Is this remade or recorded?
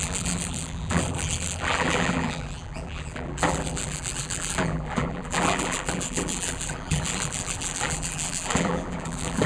remade